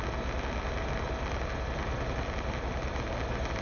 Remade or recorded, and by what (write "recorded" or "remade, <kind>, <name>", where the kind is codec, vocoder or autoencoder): recorded